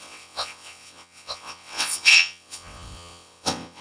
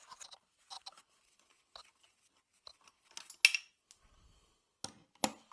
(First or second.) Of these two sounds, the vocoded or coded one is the first